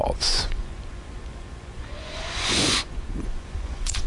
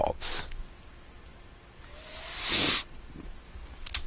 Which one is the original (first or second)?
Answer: second